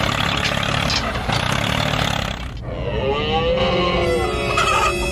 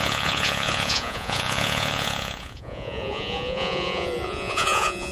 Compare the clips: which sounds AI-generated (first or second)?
second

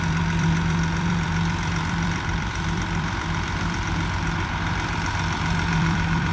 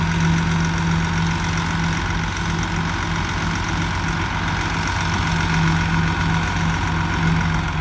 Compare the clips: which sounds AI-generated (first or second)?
first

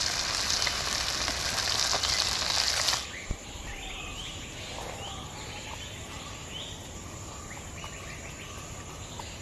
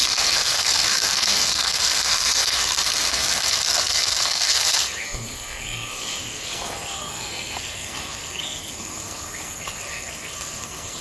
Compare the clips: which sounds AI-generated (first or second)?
second